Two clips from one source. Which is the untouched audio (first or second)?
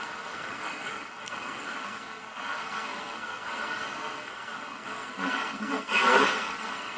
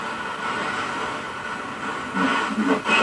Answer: second